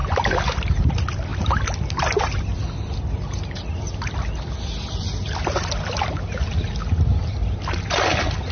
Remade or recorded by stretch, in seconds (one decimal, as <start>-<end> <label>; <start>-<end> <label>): 0.0-8.5 recorded